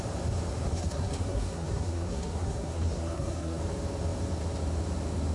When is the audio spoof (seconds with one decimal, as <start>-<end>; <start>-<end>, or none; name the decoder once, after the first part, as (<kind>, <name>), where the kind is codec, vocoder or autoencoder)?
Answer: 0.7-3.6 (codec, SNAC)